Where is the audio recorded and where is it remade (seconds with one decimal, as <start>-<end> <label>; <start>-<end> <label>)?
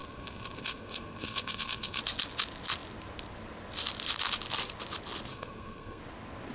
0.0-2.0 remade; 2.0-5.3 recorded; 5.3-6.0 remade; 6.0-6.5 recorded